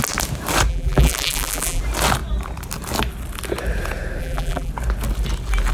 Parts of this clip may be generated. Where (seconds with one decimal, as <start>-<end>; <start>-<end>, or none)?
0.7-1.8; 4.2-4.7